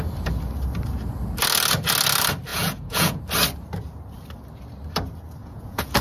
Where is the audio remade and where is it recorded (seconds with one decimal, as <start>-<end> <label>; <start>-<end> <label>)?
0.0-2.5 recorded; 2.5-3.2 remade; 3.2-5.4 recorded; 5.4-6.0 remade